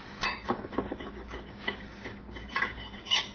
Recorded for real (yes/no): no